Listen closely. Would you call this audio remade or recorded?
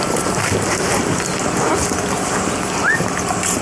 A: recorded